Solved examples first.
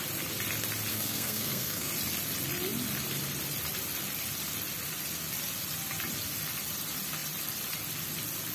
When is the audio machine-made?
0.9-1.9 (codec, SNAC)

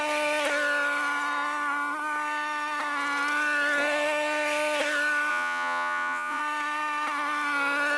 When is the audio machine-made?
5.3-6.4 (vocoder, Vocos)

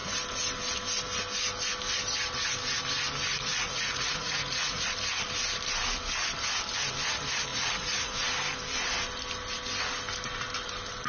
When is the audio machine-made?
3.3-4.9 (vocoder, Vocos); 7.5-8.2

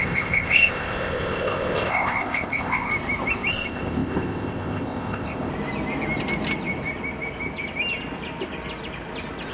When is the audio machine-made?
0.0-2.9 (codec, ZipCodec); 3.5-5.5